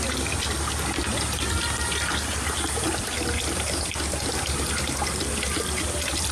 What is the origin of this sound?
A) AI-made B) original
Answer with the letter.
B